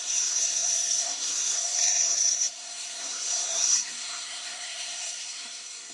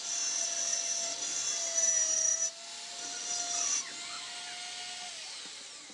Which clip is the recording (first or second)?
second